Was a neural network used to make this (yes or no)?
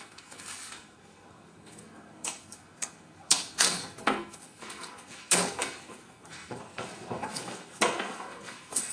yes